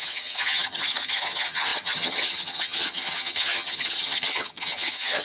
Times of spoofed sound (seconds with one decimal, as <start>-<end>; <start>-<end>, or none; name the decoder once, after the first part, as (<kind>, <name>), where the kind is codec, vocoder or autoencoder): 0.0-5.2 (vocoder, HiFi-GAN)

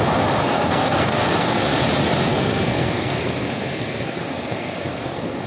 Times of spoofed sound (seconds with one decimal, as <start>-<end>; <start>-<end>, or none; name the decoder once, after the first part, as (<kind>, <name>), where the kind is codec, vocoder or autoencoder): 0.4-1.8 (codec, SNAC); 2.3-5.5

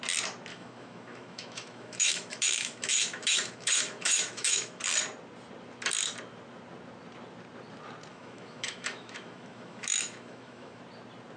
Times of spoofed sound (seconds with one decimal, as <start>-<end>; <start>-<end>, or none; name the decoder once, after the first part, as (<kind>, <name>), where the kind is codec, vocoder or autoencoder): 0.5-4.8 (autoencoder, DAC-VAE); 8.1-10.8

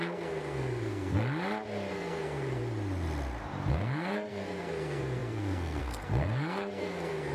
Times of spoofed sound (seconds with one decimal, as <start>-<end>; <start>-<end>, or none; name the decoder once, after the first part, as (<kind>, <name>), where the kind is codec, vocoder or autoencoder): 0.0-1.2 (codec, SNAC); 1.9-2.6; 3.7-7.3

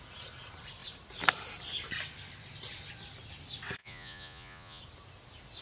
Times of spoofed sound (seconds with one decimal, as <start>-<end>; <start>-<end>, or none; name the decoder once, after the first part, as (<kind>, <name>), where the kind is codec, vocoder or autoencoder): 3.8-4.8 (vocoder, Vocos)